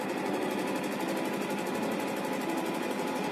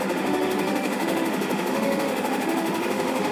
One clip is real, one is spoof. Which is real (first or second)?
first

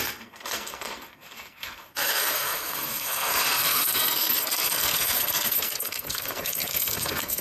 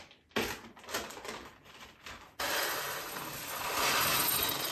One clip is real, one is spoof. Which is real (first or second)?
second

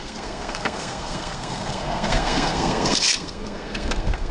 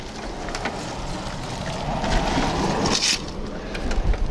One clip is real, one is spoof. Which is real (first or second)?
second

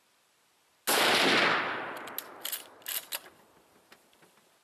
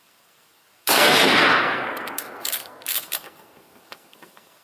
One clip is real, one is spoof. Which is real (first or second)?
first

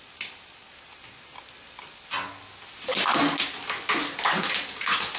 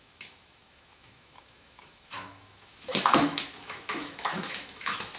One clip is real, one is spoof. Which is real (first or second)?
first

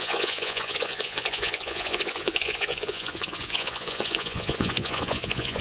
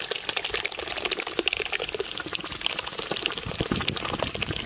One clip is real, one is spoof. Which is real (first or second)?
second